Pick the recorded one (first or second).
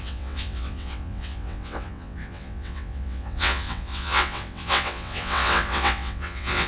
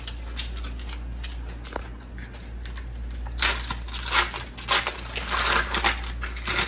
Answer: second